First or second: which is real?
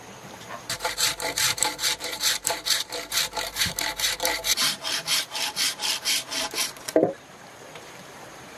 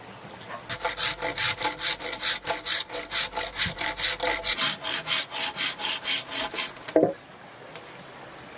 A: second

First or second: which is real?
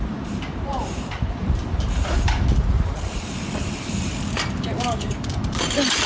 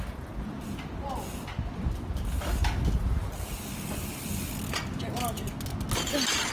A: second